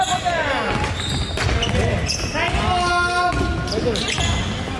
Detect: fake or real real